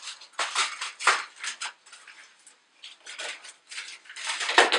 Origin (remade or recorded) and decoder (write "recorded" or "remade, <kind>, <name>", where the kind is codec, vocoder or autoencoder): recorded